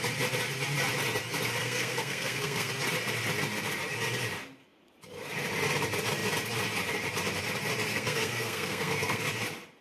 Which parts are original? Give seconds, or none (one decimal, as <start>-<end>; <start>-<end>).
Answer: 0.0-1.6; 2.7-7.9; 9.2-9.8